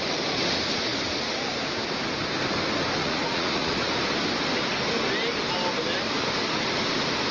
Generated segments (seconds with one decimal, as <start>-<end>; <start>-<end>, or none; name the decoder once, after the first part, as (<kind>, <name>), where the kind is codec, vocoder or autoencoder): 3.0-3.9 (vocoder, Vocos)